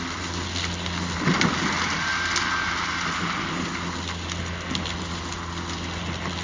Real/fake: real